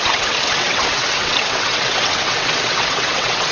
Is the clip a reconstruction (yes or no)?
yes